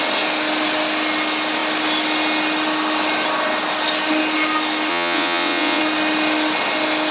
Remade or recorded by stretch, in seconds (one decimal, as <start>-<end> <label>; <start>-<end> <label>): 0.0-4.9 recorded; 4.9-5.8 remade; 5.8-7.1 recorded

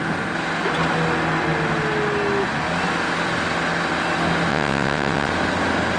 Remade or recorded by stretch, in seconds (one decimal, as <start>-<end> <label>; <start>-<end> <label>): 0.0-4.5 recorded; 4.5-5.3 remade; 5.3-6.0 recorded